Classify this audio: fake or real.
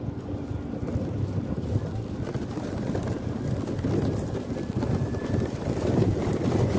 real